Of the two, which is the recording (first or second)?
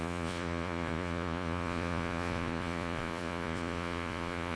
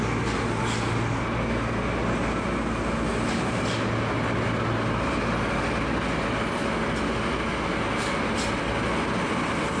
second